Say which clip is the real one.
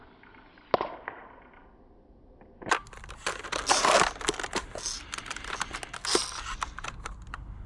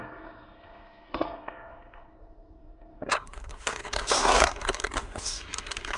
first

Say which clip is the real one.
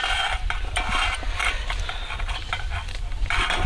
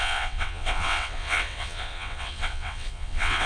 first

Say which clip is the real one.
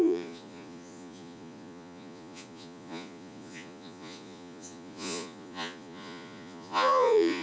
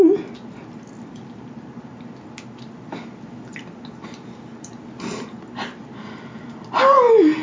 second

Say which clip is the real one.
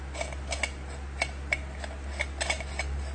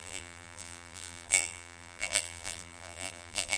first